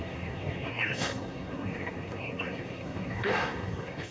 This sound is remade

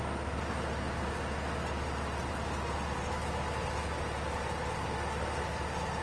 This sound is recorded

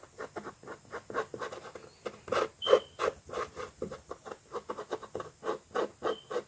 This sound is recorded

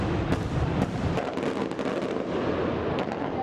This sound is recorded